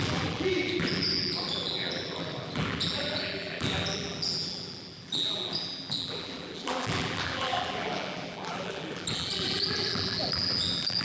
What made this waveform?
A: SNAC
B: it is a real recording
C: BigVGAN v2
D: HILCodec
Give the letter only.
C